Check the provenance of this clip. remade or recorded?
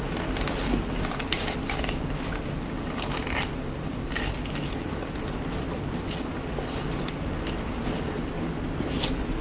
recorded